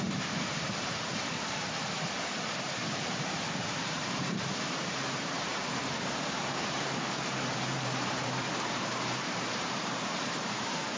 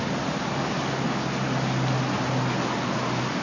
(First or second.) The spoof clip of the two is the first